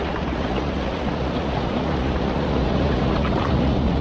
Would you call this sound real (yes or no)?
no